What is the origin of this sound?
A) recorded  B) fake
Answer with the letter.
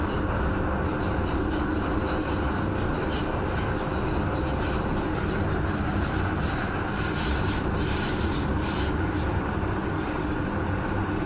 A